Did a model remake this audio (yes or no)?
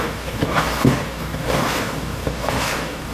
yes